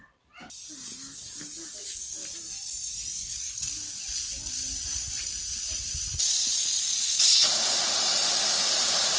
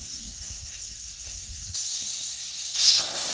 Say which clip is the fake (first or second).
second